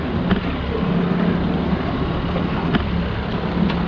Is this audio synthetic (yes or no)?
no